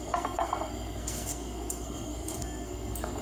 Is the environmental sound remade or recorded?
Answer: remade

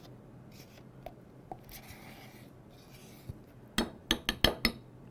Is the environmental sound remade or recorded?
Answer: recorded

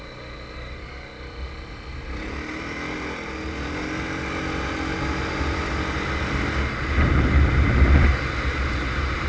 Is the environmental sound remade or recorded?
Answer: recorded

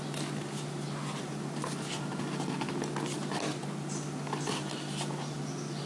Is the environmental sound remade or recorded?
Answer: recorded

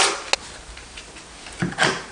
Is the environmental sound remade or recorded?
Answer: recorded